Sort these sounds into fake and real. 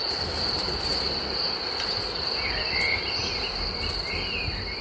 real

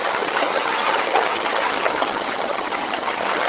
fake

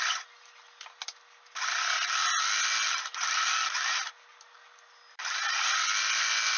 real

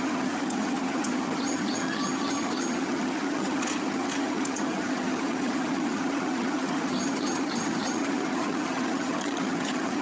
fake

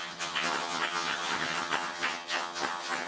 fake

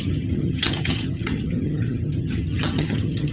fake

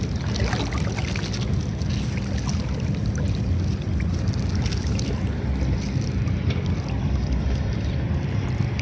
real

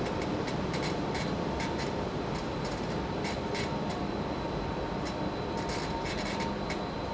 real